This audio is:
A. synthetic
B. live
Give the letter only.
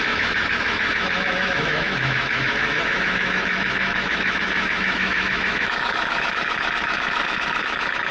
A